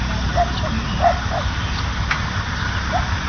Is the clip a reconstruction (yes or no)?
no